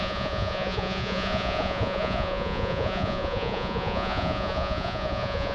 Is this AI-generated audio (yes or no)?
yes